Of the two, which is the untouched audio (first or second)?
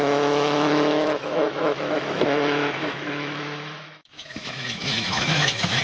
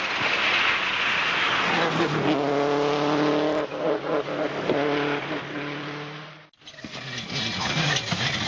second